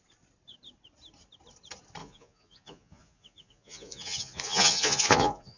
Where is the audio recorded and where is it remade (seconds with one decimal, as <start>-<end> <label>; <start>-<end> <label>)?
0.0-2.0 recorded; 2.0-5.6 remade